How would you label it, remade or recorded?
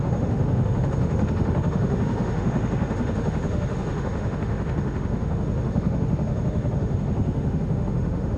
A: remade